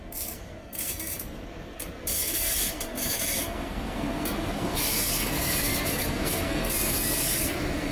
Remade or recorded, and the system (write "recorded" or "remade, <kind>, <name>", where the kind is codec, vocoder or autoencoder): remade, codec, SNAC